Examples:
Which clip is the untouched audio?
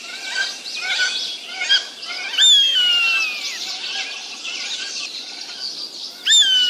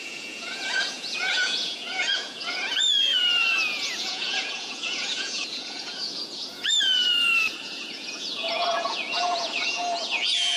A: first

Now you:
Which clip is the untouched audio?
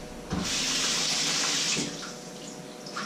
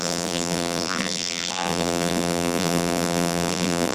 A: first